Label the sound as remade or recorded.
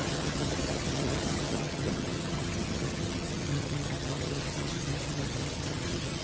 remade